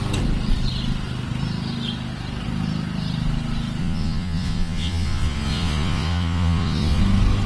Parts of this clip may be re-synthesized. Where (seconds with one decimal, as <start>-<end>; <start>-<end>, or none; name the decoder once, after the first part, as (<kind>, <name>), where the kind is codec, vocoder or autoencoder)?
3.8-7.0 (vocoder, Vocos)